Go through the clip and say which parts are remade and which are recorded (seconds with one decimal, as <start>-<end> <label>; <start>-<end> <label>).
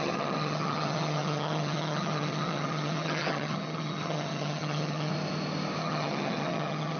0.0-5.1 remade; 5.1-5.8 recorded; 5.8-7.0 remade